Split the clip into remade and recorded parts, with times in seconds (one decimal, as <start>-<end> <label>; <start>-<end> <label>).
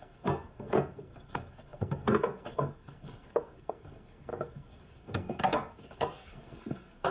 0.0-7.1 remade